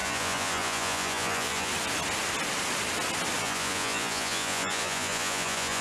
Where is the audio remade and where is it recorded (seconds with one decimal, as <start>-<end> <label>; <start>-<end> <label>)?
0.0-1.7 remade; 1.7-3.4 recorded; 3.4-5.8 remade